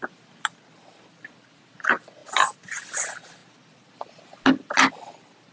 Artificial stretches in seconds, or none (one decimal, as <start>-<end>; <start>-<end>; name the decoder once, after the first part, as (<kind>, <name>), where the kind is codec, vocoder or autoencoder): none